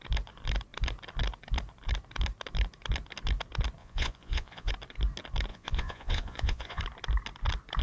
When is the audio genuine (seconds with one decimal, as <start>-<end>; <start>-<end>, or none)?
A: 0.0-3.8; 4.7-5.5; 6.8-7.8